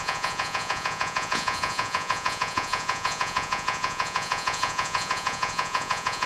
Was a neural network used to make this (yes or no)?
yes